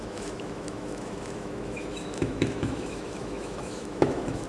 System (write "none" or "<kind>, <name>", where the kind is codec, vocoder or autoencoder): autoencoder, DAC-VAE